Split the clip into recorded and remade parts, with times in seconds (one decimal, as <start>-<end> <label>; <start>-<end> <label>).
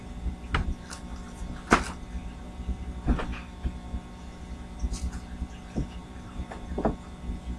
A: 0.0-6.0 recorded; 6.0-6.5 remade; 6.5-7.6 recorded